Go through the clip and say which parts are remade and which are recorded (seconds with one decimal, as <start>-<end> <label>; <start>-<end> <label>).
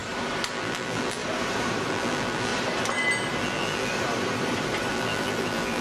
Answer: 0.0-0.5 recorded; 0.5-1.2 remade; 1.2-1.9 recorded; 1.9-2.5 remade; 2.5-3.4 recorded; 3.4-3.9 remade; 3.9-4.9 recorded; 4.9-5.8 remade